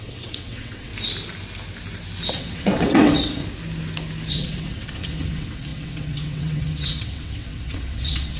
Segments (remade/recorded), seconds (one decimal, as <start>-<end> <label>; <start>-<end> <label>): 0.0-0.9 remade; 0.9-2.3 recorded; 2.3-3.4 remade; 3.4-4.3 recorded; 4.3-8.4 remade